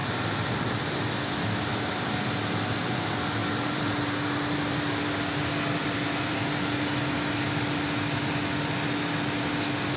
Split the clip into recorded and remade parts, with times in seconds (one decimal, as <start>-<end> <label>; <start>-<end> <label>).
0.0-0.5 remade; 0.5-3.4 recorded; 3.4-7.4 remade; 7.4-10.0 recorded